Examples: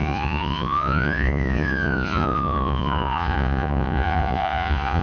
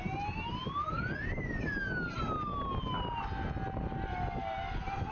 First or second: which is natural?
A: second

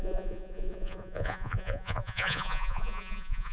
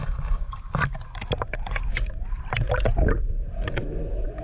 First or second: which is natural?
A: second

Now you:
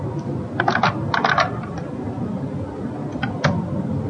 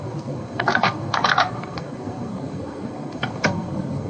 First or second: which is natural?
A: first